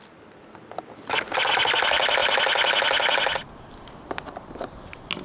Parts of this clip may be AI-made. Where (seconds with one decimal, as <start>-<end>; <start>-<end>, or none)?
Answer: none